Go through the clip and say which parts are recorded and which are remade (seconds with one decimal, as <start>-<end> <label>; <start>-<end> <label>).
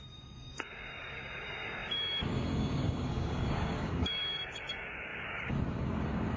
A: 0.0-6.4 remade